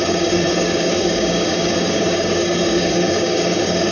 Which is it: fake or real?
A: fake